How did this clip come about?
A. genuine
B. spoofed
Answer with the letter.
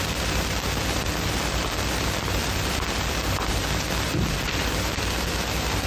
B